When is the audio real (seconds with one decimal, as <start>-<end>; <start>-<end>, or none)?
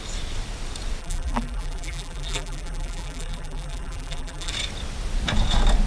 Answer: 0.0-1.0; 4.5-5.9